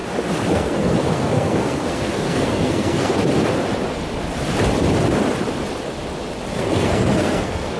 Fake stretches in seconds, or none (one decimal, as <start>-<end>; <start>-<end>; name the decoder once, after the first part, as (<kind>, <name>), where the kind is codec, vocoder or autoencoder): 0.5-3.2 (codec, SNAC); 6.5-7.8